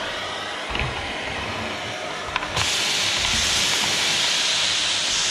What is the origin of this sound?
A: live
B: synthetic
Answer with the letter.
B